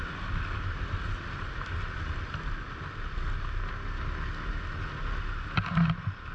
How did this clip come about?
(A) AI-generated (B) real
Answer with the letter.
B